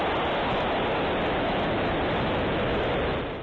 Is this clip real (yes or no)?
yes